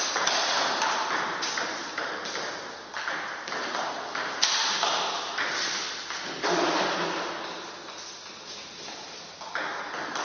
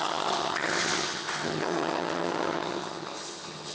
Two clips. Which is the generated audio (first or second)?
second